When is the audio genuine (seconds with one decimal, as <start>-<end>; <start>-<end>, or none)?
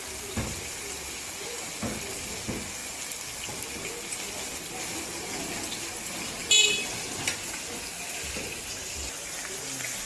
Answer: 0.0-10.1